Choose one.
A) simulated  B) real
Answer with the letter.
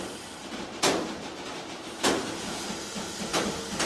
B